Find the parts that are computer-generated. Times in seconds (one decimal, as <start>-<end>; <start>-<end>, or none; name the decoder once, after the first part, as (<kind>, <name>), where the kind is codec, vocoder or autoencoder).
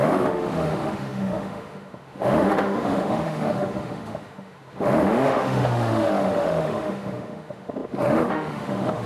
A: 0.0-9.1 (autoencoder, DAC-VAE)